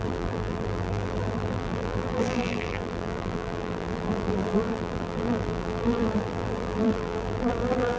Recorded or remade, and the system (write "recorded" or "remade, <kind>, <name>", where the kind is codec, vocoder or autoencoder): remade, vocoder, BigVGAN v2